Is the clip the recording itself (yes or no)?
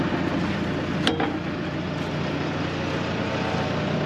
yes